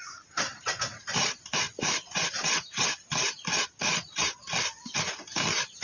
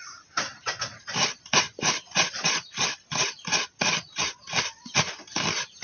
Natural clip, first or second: first